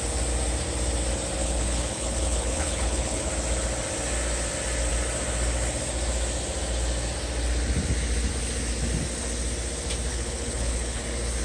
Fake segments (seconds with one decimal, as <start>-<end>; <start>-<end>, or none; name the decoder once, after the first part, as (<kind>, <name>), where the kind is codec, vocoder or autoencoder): 1.4-3.3 (codec, HILCodec); 10.1-11.0